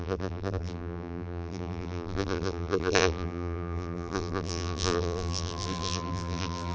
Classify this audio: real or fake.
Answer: fake